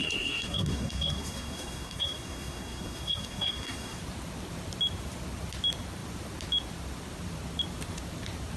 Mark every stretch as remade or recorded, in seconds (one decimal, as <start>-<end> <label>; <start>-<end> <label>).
0.0-4.0 remade; 4.0-8.6 recorded